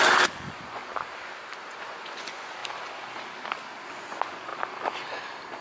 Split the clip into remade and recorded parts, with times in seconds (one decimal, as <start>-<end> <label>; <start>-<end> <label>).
0.0-0.8 remade; 0.8-1.7 recorded; 1.7-2.6 remade; 2.6-3.9 recorded; 3.9-4.5 remade; 4.5-5.6 recorded